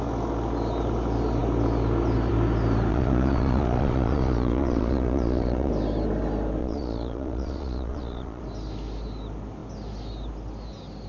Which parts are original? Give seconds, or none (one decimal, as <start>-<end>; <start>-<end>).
0.0-2.9; 5.7-6.6; 8.4-11.1